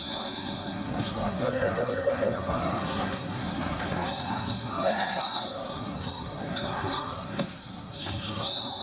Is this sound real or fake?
fake